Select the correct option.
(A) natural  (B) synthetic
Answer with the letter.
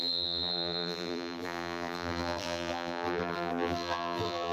B